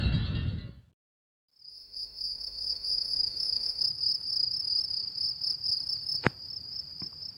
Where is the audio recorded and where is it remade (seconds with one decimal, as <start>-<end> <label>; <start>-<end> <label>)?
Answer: 0.0-1.7 recorded; 1.7-3.8 remade; 3.8-7.4 recorded